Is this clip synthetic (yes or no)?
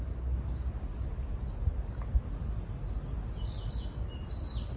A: no